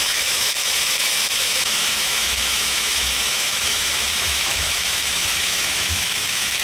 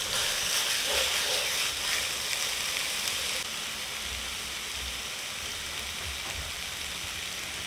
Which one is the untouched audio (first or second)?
second